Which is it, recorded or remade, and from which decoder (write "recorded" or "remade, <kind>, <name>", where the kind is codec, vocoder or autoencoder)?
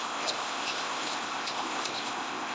remade, codec, ZipCodec